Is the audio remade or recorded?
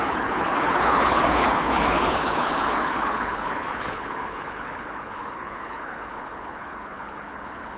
remade